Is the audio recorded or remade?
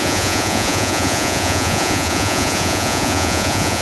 remade